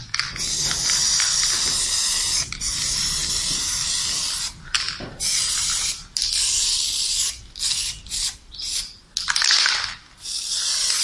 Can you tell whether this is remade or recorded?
recorded